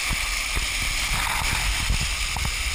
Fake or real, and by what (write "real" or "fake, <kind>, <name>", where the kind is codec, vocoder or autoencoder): real